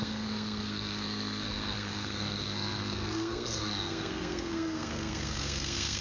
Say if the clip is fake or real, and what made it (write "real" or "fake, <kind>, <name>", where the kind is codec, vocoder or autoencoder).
fake, codec, SNAC